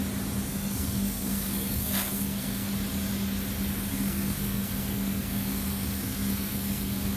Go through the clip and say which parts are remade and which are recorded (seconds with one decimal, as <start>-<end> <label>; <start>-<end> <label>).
0.0-0.5 recorded; 0.5-2.7 remade; 2.7-3.9 recorded; 3.9-7.2 remade